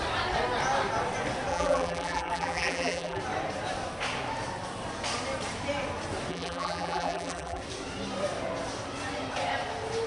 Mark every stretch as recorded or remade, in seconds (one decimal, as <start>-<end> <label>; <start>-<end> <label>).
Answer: 0.0-1.5 recorded; 1.5-3.2 remade; 3.2-6.3 recorded; 6.3-7.6 remade; 7.6-10.1 recorded